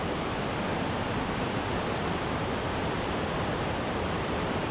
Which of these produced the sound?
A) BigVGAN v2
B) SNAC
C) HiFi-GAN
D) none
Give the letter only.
A